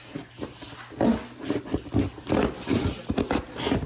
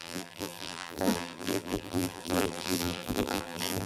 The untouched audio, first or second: first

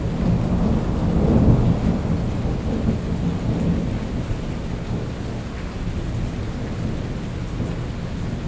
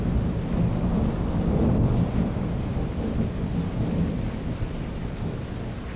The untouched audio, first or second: first